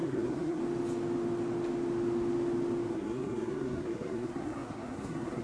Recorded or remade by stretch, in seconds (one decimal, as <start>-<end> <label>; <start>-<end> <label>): 0.0-0.6 remade; 0.6-2.9 recorded; 2.9-5.4 remade